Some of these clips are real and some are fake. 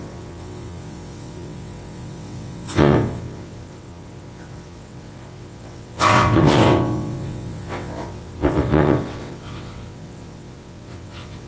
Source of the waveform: fake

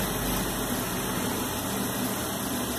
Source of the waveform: fake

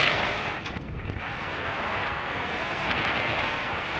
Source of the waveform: fake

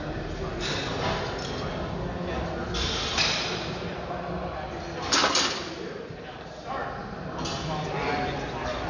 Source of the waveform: real